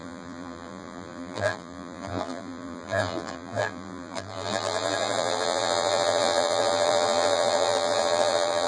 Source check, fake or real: fake